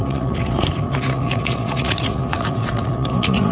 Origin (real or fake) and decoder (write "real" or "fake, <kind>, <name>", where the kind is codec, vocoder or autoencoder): fake, vocoder, Vocos